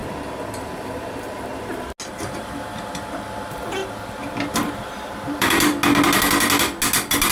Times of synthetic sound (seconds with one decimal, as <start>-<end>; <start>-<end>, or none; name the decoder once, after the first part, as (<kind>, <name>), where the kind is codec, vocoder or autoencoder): 0.6-1.5 (vocoder, BigVGAN v2); 2.1-3.8; 4.5-5.7